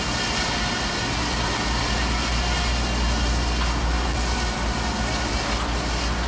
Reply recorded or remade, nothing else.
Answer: recorded